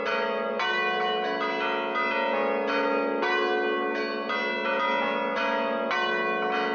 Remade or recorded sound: recorded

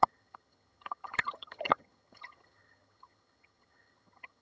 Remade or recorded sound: remade